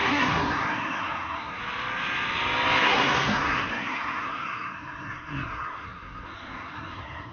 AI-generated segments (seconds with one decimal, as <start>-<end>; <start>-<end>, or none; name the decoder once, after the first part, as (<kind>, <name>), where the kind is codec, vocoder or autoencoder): 0.0-1.6 (codec, SNAC); 2.8-7.3